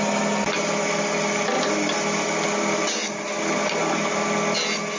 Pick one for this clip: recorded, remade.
recorded